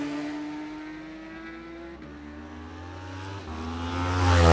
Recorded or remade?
recorded